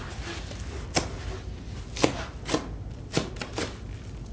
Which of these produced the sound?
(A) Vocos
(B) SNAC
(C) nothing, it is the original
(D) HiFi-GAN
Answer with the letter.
C